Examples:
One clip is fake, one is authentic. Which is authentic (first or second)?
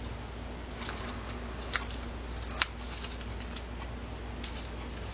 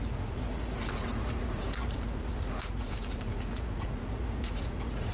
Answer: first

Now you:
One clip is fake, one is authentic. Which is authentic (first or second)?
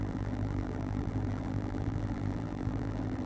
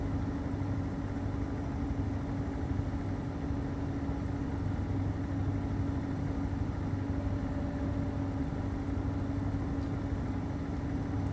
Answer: second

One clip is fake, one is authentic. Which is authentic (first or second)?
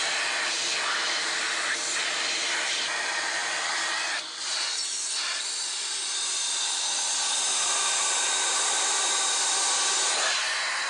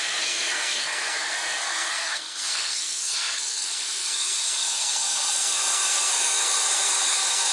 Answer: first